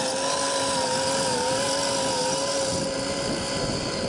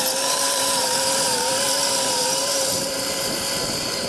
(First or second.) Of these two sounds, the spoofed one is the second